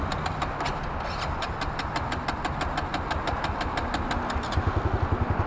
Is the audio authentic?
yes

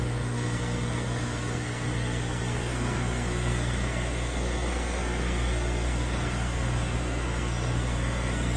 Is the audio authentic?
no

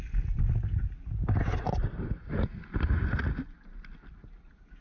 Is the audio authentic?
yes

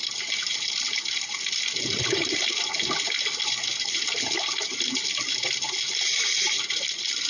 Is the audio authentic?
yes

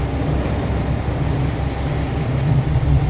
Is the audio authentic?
yes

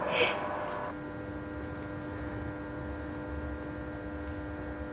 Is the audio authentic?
yes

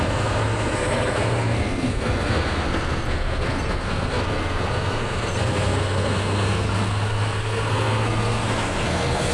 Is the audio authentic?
no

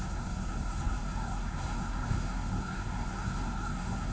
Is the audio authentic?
no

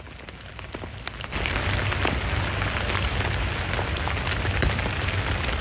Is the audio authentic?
yes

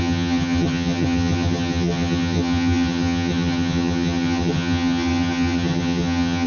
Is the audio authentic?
no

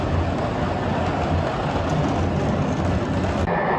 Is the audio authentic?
yes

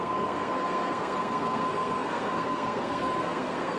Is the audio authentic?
no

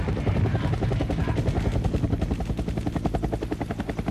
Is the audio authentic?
yes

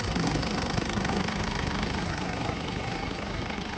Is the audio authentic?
no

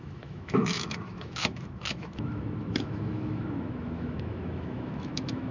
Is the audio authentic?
no